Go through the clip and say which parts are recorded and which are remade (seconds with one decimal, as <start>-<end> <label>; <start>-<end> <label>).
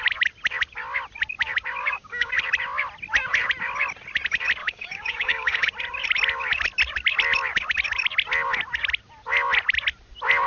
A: 0.0-1.8 recorded; 1.8-2.3 remade; 2.3-4.6 recorded; 4.6-5.7 remade; 5.7-10.5 recorded